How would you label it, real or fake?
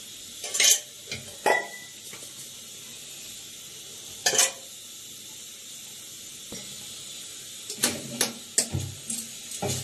real